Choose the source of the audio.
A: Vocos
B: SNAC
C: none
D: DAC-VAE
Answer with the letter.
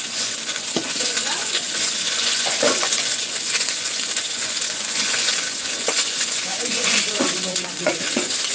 A